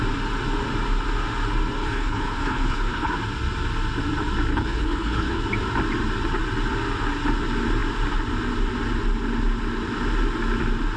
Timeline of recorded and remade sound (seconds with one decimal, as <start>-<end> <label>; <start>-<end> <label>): 0.0-1.8 recorded; 1.8-3.1 remade; 3.1-4.5 recorded; 4.5-5.4 remade; 5.4-11.0 recorded